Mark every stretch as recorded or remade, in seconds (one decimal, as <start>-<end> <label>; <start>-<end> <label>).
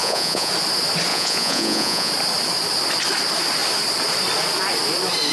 0.0-0.5 remade; 0.5-1.1 recorded; 1.1-2.1 remade; 2.1-5.3 recorded